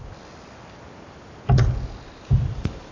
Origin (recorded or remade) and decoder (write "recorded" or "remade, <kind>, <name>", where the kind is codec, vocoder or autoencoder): recorded